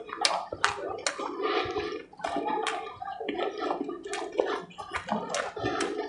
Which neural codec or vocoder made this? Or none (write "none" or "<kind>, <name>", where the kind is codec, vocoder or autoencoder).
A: none